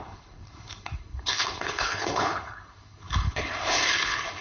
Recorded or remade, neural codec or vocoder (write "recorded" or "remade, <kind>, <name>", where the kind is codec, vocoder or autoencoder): remade, codec, HILCodec